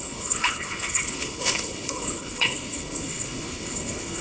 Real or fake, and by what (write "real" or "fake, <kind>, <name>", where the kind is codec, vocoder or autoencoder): fake, codec, HILCodec